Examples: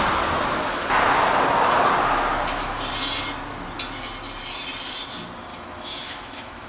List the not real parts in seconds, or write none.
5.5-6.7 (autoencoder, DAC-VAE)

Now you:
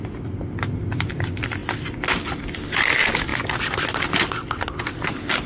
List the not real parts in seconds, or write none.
none

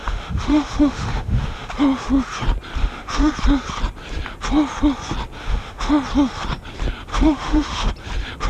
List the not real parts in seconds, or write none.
0.0-1.7 (autoencoder, DAC-VAE); 2.8-3.3; 5.4-5.9; 7.1-7.9

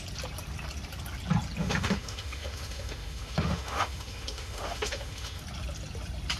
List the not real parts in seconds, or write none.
1.6-5.4 (autoencoder, DAC-VAE)

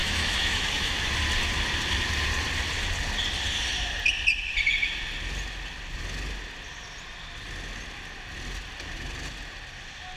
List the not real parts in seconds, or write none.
0.0-1.1 (autoencoder, DAC-VAE)